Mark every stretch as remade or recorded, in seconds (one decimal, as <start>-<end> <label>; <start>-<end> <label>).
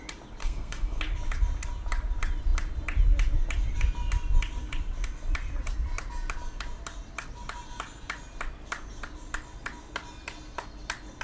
0.0-0.4 recorded; 0.4-1.0 remade; 1.0-11.2 recorded